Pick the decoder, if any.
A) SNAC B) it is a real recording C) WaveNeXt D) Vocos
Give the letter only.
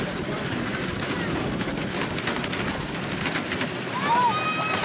B